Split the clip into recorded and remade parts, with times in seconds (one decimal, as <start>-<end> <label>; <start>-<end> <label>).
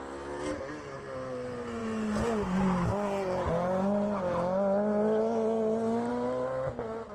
0.0-7.1 recorded